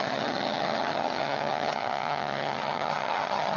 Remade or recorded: remade